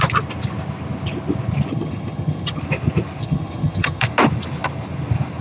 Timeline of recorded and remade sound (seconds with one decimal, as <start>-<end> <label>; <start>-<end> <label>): 0.0-1.7 recorded; 1.7-2.6 remade; 2.6-3.2 recorded; 3.2-4.0 remade; 4.0-5.4 recorded